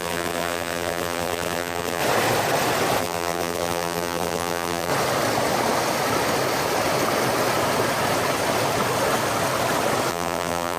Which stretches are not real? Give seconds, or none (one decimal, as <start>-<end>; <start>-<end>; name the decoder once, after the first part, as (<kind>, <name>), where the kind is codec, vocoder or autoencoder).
0.0-2.0 (vocoder, BigVGAN v2); 3.0-4.9; 10.1-10.8